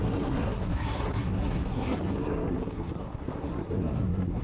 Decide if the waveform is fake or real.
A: fake